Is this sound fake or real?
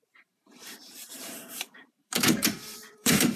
fake